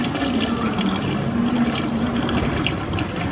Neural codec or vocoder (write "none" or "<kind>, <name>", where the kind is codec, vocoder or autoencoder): none